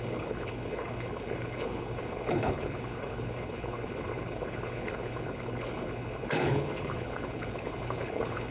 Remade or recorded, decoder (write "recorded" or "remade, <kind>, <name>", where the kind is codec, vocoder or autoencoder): remade, codec, HILCodec